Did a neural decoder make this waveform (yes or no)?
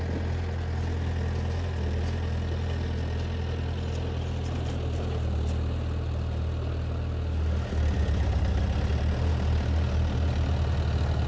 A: no